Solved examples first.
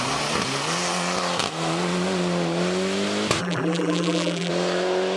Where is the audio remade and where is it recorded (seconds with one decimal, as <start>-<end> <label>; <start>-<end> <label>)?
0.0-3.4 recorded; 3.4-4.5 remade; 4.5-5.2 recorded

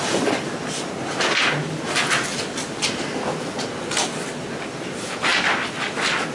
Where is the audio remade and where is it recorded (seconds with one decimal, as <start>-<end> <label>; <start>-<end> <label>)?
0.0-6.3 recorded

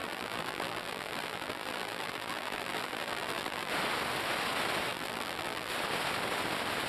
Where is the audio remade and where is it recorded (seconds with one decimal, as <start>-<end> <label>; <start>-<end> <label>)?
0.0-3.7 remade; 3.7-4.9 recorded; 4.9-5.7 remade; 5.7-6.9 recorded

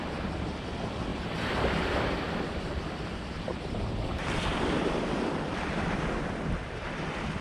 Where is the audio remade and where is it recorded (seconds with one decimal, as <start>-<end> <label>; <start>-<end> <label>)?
0.0-3.5 recorded; 3.5-4.4 remade; 4.4-7.4 recorded

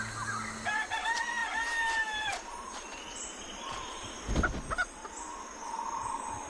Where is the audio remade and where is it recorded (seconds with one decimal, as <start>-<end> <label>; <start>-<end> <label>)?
0.0-1.4 recorded; 1.4-4.1 remade; 4.1-6.5 recorded

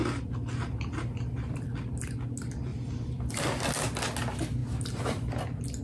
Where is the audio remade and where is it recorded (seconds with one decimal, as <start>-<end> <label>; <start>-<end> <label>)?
0.0-2.7 recorded; 2.7-3.4 remade; 3.4-4.6 recorded; 4.6-5.3 remade; 5.3-5.8 recorded